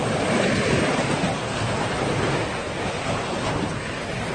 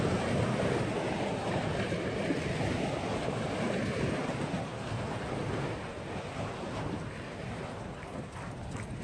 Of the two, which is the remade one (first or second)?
first